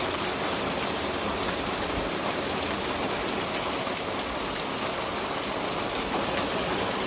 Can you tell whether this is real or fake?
real